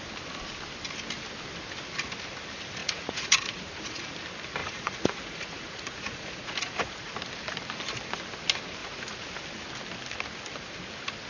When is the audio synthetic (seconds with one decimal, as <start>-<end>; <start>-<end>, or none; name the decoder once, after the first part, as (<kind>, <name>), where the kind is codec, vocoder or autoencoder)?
2.8-4.1 (vocoder, Vocos); 4.6-7.1; 8.8-9.3